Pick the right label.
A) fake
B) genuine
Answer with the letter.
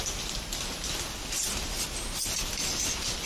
B